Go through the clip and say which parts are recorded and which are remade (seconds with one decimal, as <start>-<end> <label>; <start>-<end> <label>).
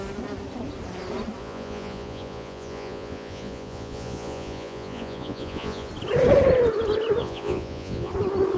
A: 0.0-1.4 recorded; 1.4-5.9 remade; 5.9-7.2 recorded; 7.2-8.1 remade; 8.1-8.6 recorded